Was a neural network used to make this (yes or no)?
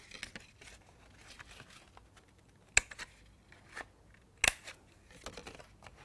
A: no